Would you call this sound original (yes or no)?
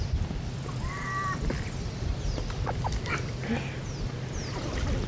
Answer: yes